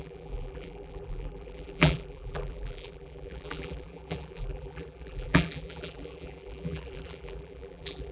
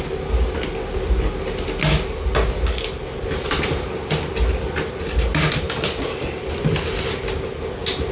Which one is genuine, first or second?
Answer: second